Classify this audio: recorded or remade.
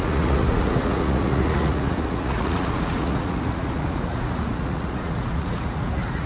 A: remade